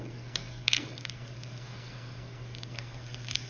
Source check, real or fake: fake